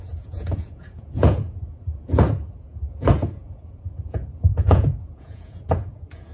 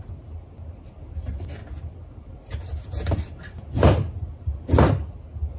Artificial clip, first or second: first